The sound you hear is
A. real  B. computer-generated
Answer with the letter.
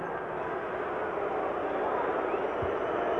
A